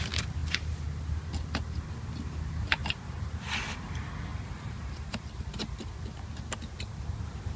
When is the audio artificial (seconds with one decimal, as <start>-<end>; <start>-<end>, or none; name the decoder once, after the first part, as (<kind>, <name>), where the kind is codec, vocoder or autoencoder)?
4.3-5.3 (vocoder, BigVGAN v2)